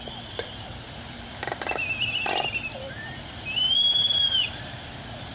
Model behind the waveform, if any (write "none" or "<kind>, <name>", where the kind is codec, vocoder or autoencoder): none